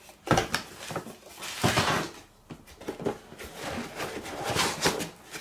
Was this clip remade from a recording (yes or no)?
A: no